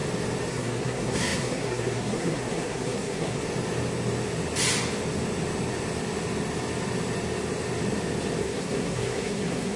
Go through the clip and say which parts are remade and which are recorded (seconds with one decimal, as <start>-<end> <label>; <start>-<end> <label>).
0.0-0.5 recorded; 0.5-3.4 remade; 3.4-8.4 recorded; 8.4-9.8 remade